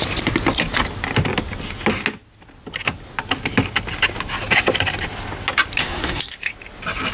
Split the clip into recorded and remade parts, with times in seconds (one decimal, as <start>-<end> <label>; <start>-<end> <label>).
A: 0.0-5.8 recorded; 5.8-6.3 remade; 6.3-7.1 recorded